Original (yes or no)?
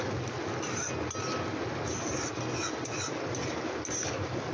yes